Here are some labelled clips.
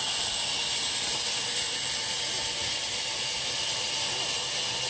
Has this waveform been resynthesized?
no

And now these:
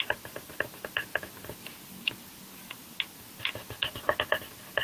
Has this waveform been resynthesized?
no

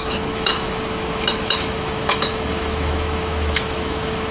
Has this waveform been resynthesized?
yes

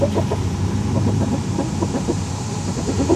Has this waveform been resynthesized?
no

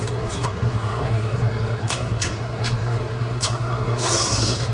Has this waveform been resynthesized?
yes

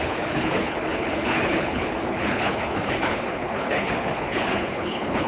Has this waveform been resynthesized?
yes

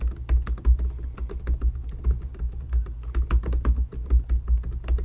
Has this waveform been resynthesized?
no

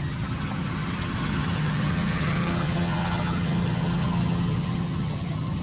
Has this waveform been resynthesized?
yes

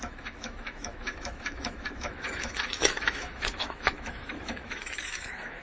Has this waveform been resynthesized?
yes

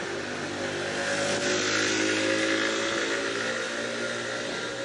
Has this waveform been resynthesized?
no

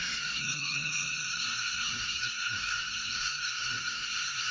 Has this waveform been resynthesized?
yes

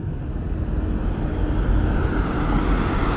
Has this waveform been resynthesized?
no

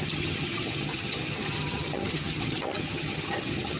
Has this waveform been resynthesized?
yes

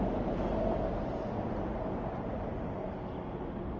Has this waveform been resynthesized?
no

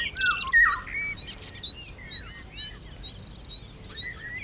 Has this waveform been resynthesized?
no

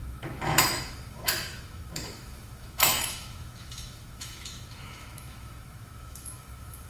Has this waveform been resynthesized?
yes